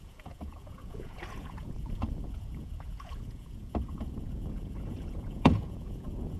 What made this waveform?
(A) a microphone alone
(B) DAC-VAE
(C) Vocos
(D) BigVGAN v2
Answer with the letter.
C